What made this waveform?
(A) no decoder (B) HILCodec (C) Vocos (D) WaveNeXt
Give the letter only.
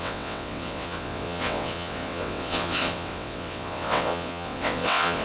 D